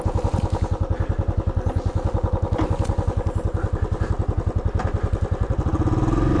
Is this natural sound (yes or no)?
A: yes